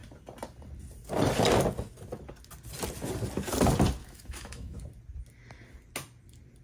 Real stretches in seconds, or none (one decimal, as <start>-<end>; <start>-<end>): 0.0-4.0; 4.8-6.6